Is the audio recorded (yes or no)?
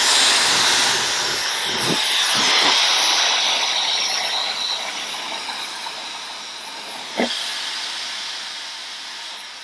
yes